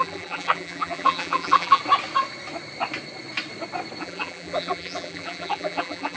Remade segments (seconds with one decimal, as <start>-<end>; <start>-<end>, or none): 0.0-1.8; 4.0-6.2

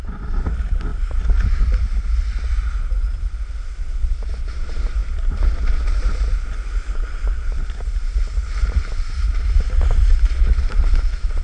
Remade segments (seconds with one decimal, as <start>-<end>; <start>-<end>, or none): 0.9-1.8

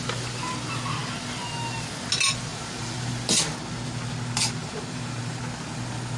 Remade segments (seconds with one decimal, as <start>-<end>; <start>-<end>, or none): 2.5-3.1; 4.6-5.4

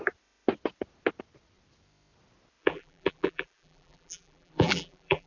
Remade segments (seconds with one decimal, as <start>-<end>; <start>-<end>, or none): 2.6-5.3

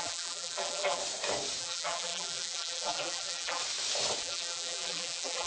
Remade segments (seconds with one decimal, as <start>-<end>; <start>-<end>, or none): 0.0-1.0; 1.6-3.6; 4.2-5.5

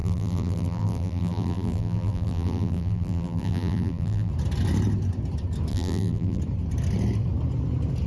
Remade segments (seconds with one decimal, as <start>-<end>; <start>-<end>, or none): 0.0-4.3; 5.7-6.4

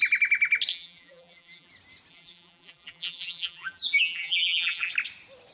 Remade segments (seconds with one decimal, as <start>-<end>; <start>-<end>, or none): 0.7-1.7; 2.1-4.9